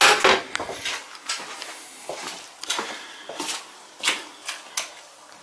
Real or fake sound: real